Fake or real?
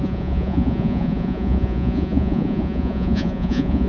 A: fake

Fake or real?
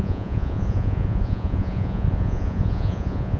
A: fake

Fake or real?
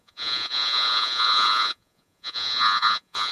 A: fake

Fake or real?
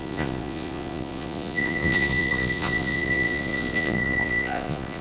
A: fake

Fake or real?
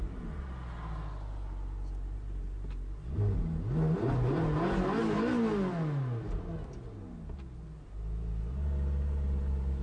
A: real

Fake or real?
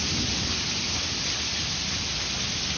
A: real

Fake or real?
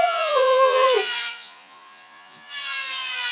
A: fake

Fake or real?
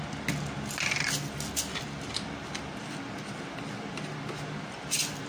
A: real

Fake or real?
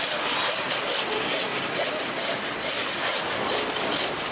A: real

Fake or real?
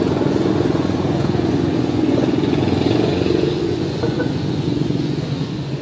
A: fake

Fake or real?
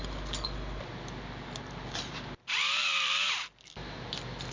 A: real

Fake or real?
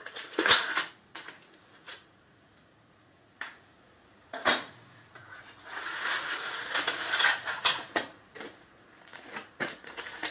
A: fake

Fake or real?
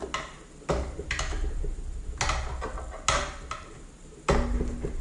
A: real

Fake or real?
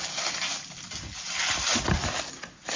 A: real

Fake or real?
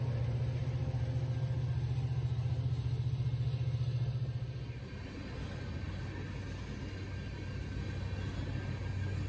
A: real